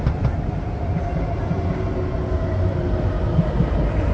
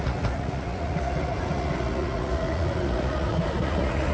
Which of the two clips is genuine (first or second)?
first